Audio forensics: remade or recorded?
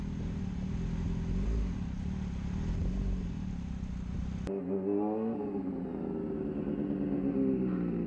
recorded